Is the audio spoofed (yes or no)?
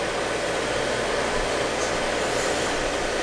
no